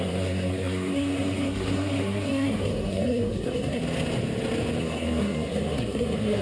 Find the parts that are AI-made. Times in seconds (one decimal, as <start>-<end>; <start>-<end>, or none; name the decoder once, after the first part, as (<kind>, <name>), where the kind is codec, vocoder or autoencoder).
0.0-3.8 (codec, SNAC); 4.8-6.4